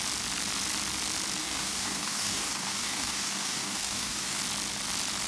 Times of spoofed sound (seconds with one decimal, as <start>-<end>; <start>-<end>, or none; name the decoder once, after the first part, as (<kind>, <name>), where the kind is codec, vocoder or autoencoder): 1.4-4.4 (codec, DAC)